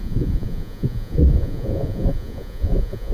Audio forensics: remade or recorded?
remade